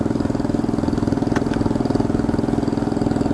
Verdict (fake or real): real